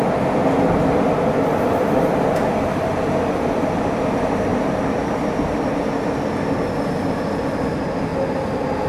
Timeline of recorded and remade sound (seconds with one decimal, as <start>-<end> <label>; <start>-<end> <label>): 0.0-4.5 recorded; 4.5-5.2 remade; 5.2-8.9 recorded